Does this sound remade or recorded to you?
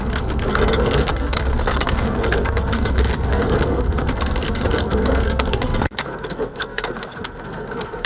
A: remade